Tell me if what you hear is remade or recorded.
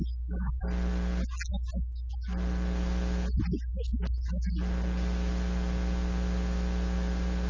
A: recorded